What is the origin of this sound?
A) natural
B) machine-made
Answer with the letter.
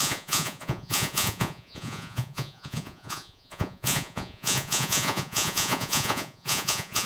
B